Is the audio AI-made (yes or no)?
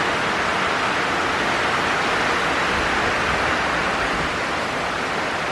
no